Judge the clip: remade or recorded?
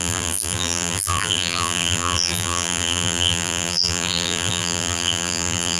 remade